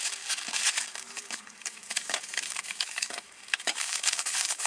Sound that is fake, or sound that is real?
fake